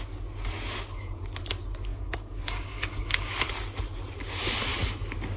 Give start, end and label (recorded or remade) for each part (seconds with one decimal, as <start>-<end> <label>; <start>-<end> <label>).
0.0-1.9 recorded; 1.9-3.3 remade; 3.3-5.4 recorded